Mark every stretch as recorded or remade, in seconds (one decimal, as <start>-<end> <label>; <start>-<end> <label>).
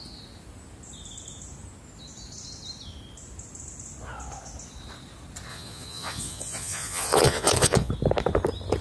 0.0-5.5 recorded; 5.5-7.9 remade; 7.9-8.8 recorded